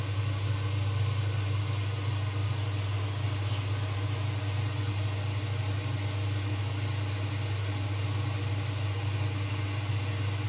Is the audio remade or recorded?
recorded